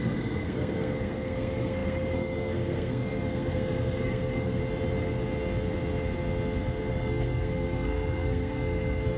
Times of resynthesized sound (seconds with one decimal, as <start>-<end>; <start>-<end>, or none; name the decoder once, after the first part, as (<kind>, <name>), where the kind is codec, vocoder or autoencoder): 0.0-4.6 (codec, SNAC); 6.9-9.2